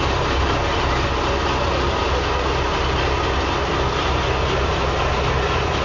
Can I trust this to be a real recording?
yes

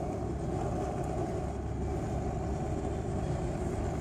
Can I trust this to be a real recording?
yes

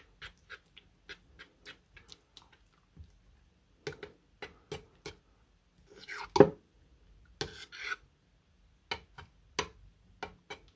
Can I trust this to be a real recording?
yes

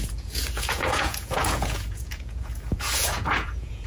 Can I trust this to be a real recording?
no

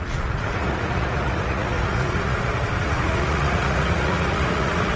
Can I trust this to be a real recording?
no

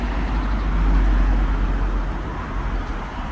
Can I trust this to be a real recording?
yes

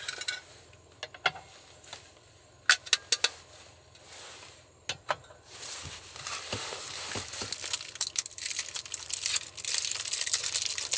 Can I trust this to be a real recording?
yes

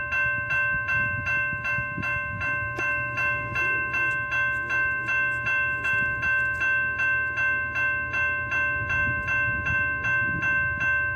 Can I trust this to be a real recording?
yes